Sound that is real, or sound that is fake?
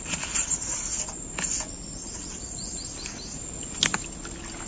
real